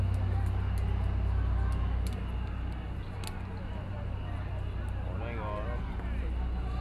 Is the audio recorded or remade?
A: recorded